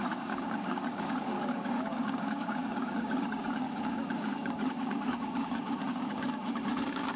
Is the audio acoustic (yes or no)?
no